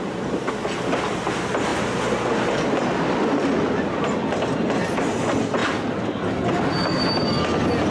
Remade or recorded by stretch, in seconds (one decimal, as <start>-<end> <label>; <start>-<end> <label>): 0.0-7.9 recorded

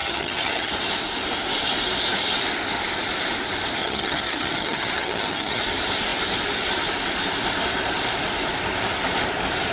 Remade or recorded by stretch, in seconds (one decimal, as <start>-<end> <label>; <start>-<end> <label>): 0.0-0.7 remade; 0.7-3.8 recorded; 3.8-5.6 remade; 5.6-9.7 recorded

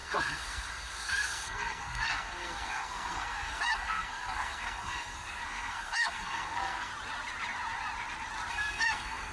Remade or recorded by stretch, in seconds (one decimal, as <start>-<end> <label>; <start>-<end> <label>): 0.0-6.9 remade; 6.9-8.5 recorded; 8.5-9.3 remade

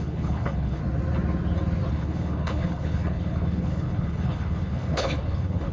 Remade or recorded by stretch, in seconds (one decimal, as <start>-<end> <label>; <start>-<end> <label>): 0.0-0.8 remade; 0.8-1.9 recorded; 1.9-5.7 remade

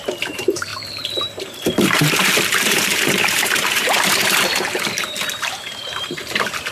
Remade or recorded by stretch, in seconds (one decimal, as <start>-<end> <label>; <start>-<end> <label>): 0.0-6.7 remade

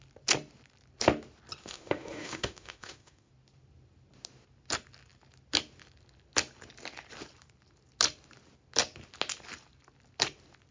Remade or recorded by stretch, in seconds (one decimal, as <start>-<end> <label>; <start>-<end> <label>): 0.0-1.6 recorded; 1.6-3.3 remade; 3.3-10.7 recorded

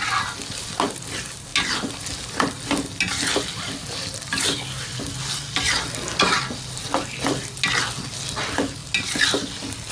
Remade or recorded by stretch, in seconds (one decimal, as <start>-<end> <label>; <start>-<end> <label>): 0.0-9.9 recorded